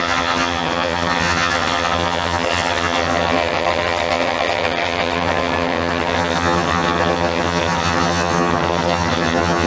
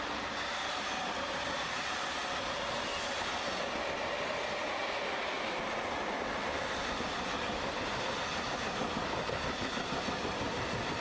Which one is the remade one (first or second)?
first